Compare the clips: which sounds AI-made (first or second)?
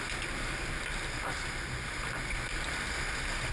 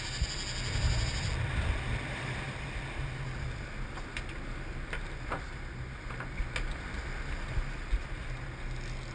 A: first